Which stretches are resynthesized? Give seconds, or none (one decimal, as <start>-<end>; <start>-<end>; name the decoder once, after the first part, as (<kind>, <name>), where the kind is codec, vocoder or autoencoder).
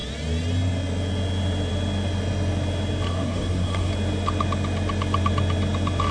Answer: 3.1-3.9 (codec, SNAC)